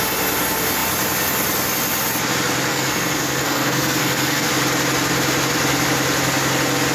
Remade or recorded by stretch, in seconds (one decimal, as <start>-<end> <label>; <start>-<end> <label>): 0.0-2.7 recorded; 2.7-4.5 remade; 4.5-6.9 recorded